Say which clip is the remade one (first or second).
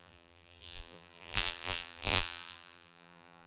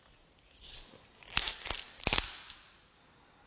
first